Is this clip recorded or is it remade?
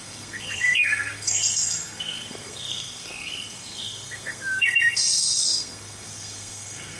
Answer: remade